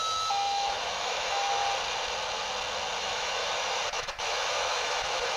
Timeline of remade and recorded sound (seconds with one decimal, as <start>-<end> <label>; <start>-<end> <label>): 0.0-1.6 remade; 1.6-3.0 recorded; 3.0-3.4 remade; 3.4-3.9 recorded; 3.9-5.4 remade

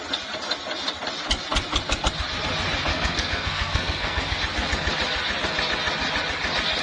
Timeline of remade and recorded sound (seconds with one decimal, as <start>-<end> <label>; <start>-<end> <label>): 0.0-2.9 recorded; 2.9-4.4 remade; 4.4-6.8 recorded

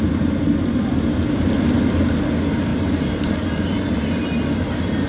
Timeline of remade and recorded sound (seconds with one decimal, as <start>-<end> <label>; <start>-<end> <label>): 0.0-2.7 recorded; 2.7-3.3 remade; 3.3-5.1 recorded

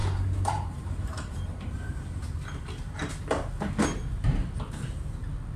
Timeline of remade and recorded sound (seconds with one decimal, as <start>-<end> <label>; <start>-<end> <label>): 0.0-0.5 recorded; 0.5-2.2 remade; 2.2-5.6 recorded

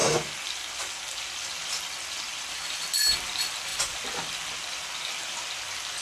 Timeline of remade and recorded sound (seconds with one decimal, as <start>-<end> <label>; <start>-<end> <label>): 0.0-2.5 remade; 2.5-6.0 recorded

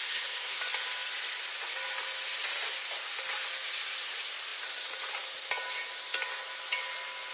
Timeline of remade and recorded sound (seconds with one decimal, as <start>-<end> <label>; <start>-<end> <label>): 0.0-0.6 remade; 0.6-7.3 recorded

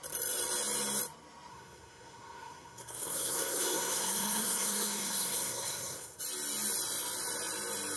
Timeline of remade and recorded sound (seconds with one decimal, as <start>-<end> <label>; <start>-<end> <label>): 0.0-1.5 recorded; 1.5-6.2 remade; 6.2-8.0 recorded